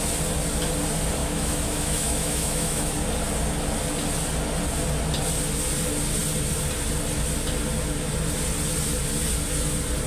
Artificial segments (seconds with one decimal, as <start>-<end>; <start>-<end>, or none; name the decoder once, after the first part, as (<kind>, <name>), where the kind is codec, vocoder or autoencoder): 1.2-2.9 (autoencoder, DAC-VAE)

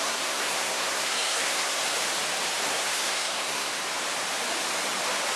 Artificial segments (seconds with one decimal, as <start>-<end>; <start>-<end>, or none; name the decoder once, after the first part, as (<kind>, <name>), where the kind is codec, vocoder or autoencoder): 0.0-1.8 (codec, SNAC); 2.7-3.7

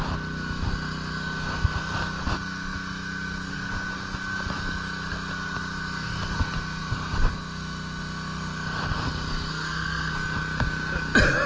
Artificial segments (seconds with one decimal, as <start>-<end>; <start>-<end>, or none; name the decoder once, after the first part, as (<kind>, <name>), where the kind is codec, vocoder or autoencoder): 9.5-10.1 (codec, SNAC)

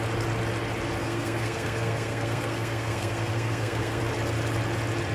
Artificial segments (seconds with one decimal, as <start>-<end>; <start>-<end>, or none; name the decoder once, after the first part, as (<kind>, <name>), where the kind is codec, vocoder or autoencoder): 1.0-4.0 (codec, SNAC)